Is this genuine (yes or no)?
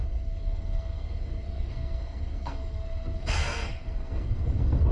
no